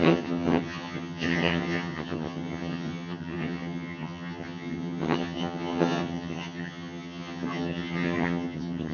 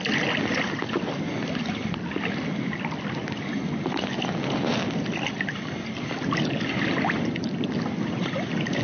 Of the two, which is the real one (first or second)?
second